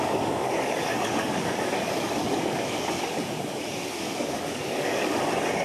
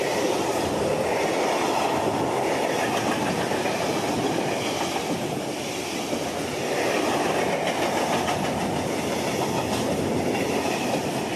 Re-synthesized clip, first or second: first